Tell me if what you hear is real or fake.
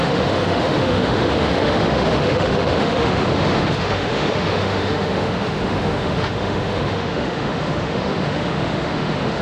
fake